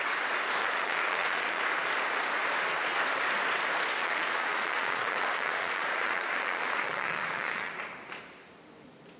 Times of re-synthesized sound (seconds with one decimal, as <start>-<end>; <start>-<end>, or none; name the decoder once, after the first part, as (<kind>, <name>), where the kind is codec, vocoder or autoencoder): 0.6-1.6 (vocoder, Vocos); 4.0-7.7